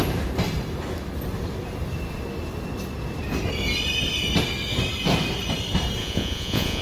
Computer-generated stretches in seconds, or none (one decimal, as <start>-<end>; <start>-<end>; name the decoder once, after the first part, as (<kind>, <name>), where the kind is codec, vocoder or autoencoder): 6.0-6.8 (vocoder, Vocos)